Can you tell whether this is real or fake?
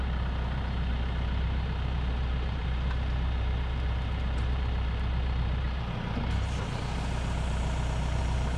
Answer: fake